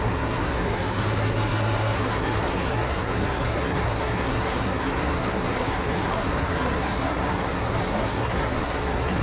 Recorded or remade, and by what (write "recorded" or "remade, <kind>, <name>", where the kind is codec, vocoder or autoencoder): remade, codec, SNAC